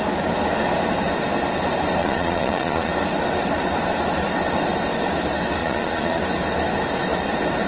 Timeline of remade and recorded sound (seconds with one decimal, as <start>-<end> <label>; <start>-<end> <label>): 0.0-2.0 recorded; 2.0-2.9 remade; 2.9-5.6 recorded; 5.6-6.2 remade; 6.2-7.7 recorded